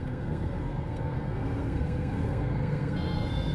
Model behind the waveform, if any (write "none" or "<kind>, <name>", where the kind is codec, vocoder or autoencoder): codec, SNAC